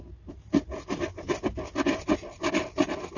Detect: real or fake real